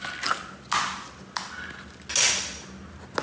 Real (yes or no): yes